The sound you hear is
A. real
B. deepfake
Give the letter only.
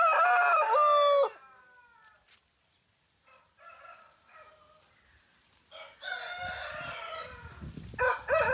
A